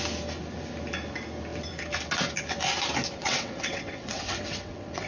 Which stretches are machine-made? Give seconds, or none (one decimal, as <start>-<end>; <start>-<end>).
3.2-5.1